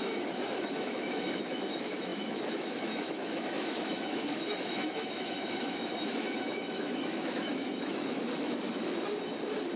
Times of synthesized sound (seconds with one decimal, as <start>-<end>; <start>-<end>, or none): 0.0-9.1